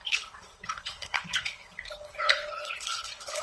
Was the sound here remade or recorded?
remade